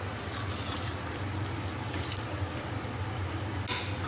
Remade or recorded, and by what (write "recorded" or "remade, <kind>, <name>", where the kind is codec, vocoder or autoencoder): recorded